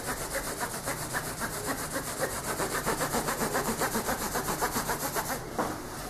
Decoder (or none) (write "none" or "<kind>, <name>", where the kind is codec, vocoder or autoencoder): none